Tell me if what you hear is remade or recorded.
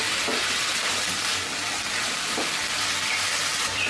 recorded